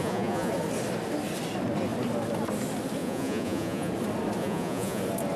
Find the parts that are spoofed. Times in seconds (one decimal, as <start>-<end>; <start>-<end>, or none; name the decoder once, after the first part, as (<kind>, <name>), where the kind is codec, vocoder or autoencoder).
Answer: 0.0-0.5 (vocoder, Vocos); 3.0-3.9; 4.4-5.0